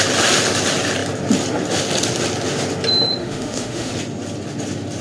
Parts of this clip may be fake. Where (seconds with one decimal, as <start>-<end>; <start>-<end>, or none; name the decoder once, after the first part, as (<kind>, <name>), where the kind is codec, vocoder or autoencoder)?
3.2-3.9 (autoencoder, DAC-VAE)